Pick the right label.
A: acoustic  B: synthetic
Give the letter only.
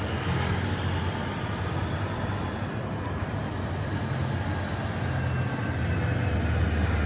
A